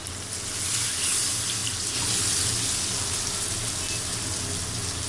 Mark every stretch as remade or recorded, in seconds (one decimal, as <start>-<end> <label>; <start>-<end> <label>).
0.0-5.1 recorded